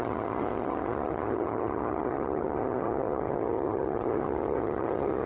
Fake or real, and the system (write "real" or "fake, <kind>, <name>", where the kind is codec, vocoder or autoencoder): fake, vocoder, HiFi-GAN